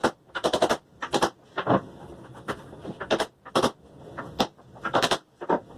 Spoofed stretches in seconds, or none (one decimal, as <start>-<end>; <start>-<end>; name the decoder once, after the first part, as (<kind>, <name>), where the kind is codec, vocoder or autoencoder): none